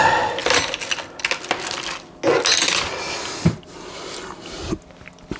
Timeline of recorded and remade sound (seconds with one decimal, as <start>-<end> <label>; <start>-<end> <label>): 0.0-5.4 recorded